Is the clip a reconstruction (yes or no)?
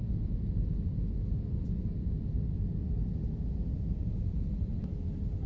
no